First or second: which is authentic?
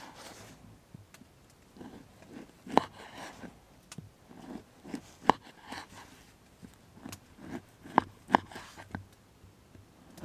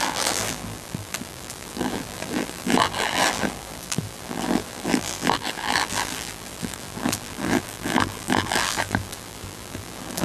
first